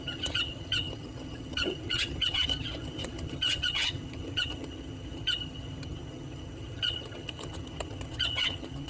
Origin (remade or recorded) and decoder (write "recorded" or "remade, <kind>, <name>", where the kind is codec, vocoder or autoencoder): remade, vocoder, HiFi-GAN